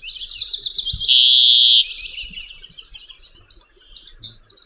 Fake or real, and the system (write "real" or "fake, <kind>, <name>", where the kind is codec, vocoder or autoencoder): real